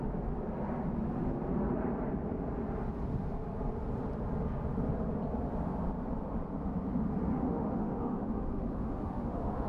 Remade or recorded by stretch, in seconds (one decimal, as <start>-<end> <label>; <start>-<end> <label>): 0.0-7.3 recorded; 7.3-9.7 remade